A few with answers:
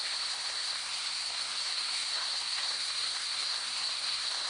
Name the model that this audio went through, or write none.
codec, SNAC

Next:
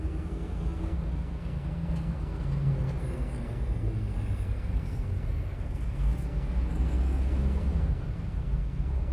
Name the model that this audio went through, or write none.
codec, SNAC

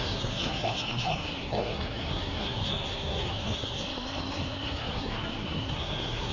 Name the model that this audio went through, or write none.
codec, SNAC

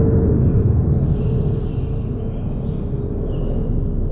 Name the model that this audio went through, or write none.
none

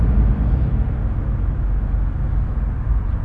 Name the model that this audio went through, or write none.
none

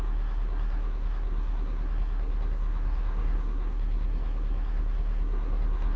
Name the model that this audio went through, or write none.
codec, SNAC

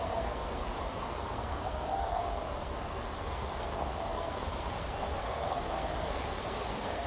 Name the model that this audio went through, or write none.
codec, SNAC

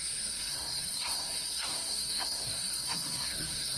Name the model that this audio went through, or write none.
codec, SNAC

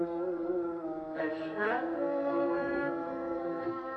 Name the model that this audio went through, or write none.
codec, SNAC